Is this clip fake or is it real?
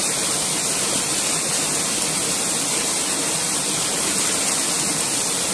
real